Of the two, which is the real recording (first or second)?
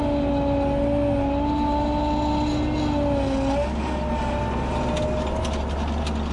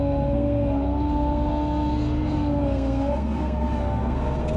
first